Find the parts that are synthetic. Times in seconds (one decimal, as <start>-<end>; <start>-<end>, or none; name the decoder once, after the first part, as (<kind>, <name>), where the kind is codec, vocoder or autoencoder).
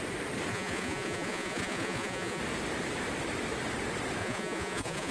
0.5-2.4 (vocoder, Vocos); 4.2-5.1